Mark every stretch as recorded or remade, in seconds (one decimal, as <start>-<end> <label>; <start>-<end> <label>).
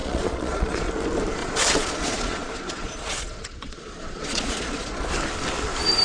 0.0-0.9 remade; 0.9-1.4 recorded; 1.4-5.0 remade; 5.0-6.0 recorded